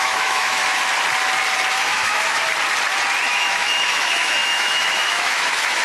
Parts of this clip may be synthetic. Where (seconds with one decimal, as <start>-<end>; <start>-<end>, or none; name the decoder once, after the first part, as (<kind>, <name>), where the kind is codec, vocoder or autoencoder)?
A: 0.0-0.6 (autoencoder, DAC-VAE); 1.7-2.4; 3.2-5.8